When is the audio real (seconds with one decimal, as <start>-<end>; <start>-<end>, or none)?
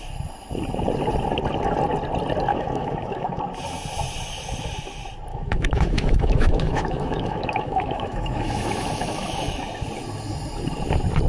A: 0.0-2.5; 3.4-5.3; 9.6-11.3